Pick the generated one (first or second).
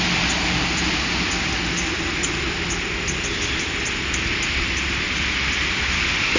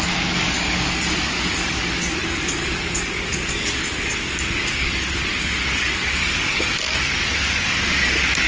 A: second